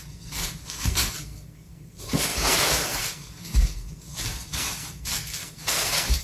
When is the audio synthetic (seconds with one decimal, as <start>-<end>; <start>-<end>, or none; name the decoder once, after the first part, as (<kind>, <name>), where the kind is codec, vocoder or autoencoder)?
0.0-6.2 (codec, SNAC)